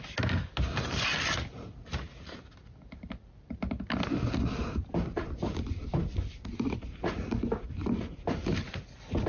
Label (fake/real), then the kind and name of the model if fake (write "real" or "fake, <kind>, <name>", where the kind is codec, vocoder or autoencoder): real